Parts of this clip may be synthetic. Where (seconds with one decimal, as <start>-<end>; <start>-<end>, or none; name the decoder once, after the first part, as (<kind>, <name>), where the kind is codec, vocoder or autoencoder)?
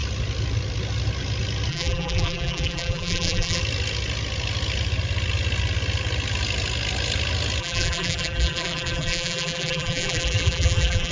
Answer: 1.7-3.6 (vocoder, BigVGAN v2); 7.6-11.1